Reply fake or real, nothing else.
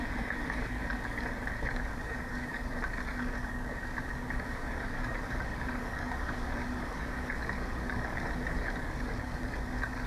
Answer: fake